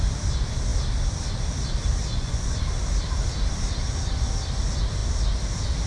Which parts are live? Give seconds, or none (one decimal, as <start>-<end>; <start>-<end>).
0.0-2.1; 2.6-5.9